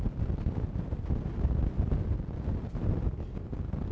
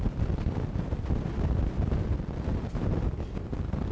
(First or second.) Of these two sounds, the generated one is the second